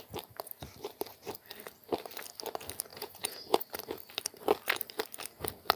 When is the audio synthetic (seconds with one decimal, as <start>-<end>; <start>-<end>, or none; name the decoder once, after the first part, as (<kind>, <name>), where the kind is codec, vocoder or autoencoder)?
2.9-3.7 (vocoder, Vocos)